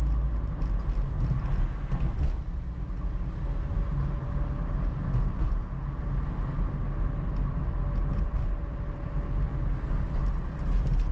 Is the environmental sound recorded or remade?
recorded